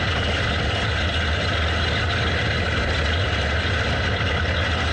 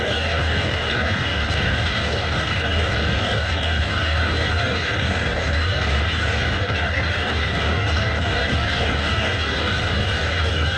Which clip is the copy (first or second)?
second